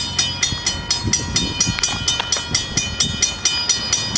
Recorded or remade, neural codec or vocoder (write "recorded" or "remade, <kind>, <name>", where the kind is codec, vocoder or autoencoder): recorded